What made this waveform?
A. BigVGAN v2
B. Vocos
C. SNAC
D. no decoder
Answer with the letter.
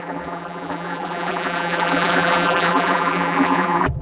A